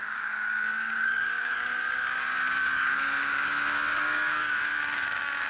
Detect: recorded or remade remade